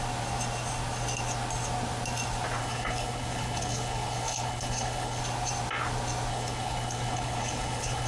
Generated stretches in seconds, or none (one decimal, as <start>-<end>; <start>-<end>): 2.6-5.2; 6.3-8.1